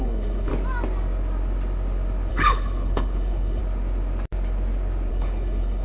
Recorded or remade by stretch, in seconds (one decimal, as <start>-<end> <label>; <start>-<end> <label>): 0.0-0.5 remade; 0.5-2.3 recorded; 2.3-3.6 remade; 3.6-5.1 recorded; 5.1-5.8 remade